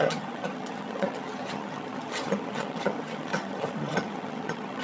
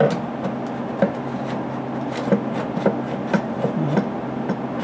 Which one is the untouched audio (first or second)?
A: second